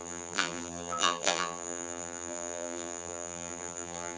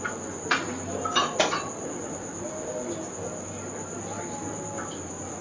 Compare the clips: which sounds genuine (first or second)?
second